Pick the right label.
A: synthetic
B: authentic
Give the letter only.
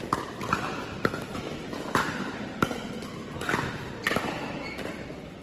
B